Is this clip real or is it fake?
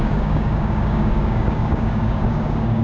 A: fake